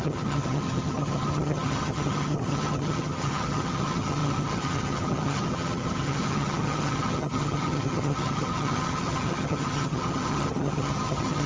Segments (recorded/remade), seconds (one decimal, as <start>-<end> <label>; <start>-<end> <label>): 0.0-11.5 remade